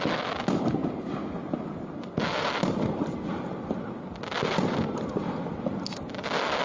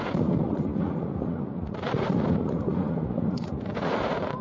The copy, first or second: second